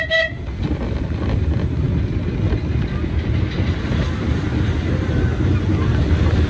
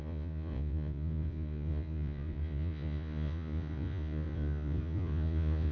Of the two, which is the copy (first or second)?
second